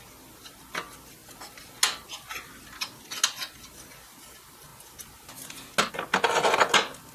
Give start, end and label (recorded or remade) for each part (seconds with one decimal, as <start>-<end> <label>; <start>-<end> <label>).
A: 0.0-7.1 recorded